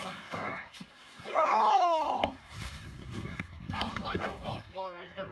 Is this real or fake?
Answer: fake